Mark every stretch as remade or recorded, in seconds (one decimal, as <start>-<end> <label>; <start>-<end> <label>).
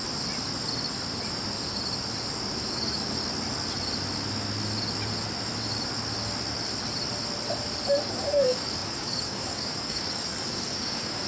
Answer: 0.0-2.7 recorded; 2.7-3.2 remade; 3.2-8.1 recorded; 8.1-11.3 remade